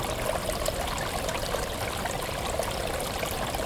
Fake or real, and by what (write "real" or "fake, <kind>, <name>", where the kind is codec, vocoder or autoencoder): real